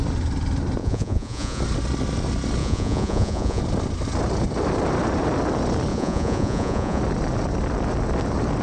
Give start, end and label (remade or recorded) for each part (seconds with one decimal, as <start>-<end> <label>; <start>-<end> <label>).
0.0-0.8 recorded; 0.8-1.6 remade; 1.6-2.6 recorded; 2.6-3.6 remade; 3.6-5.9 recorded; 5.9-7.0 remade; 7.0-8.6 recorded